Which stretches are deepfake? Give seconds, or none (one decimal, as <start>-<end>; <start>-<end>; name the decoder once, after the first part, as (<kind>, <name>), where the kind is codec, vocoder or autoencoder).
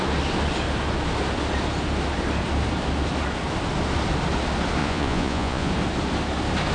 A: 4.8-5.7 (vocoder, Vocos)